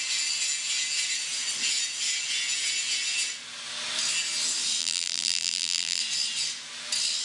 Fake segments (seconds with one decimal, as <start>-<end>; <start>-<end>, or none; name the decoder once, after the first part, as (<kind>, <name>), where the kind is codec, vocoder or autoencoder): 4.8-6.0 (vocoder, BigVGAN v2)